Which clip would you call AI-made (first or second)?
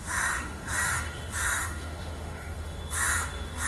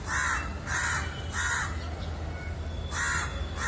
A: first